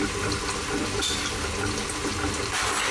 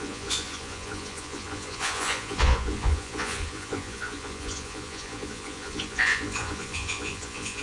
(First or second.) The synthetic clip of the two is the second